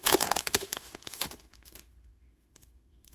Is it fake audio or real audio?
fake